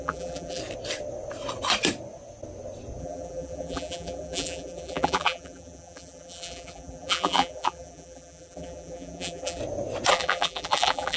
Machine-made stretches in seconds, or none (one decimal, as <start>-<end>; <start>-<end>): 0.0-0.6; 3.0-9.6; 10.1-11.2